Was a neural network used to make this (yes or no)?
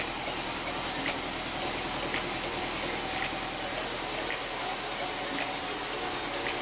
no